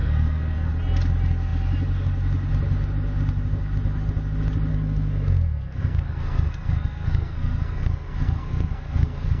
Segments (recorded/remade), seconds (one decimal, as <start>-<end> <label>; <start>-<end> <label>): 0.0-0.7 remade; 0.7-4.7 recorded; 4.7-9.4 remade

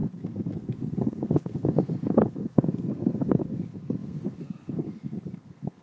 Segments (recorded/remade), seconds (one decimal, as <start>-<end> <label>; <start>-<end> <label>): 0.0-5.8 remade

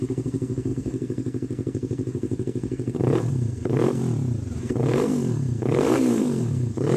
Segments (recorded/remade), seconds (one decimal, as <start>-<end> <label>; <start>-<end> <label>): 0.0-4.0 remade; 4.0-4.6 recorded; 4.6-7.0 remade

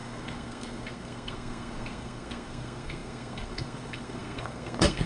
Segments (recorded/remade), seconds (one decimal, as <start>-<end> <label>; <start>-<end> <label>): 0.0-5.1 remade

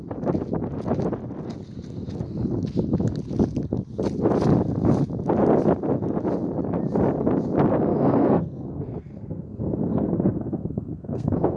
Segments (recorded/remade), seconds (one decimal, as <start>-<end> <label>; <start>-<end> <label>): 0.0-7.9 recorded; 7.9-11.6 remade

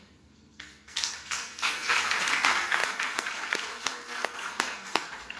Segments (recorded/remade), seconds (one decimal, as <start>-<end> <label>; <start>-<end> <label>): 0.0-5.4 remade